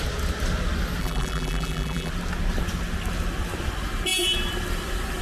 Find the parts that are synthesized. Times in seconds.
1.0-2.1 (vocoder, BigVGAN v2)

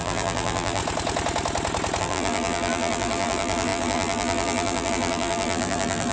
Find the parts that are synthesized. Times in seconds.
0.0-0.8 (vocoder, BigVGAN v2); 2.0-6.1

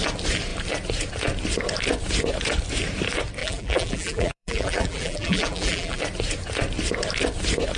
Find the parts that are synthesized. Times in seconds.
3.4-6.0 (vocoder, BigVGAN v2)